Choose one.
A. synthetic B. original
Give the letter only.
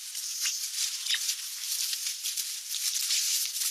B